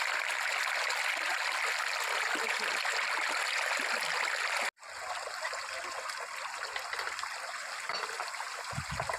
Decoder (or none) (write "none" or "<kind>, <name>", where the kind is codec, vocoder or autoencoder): none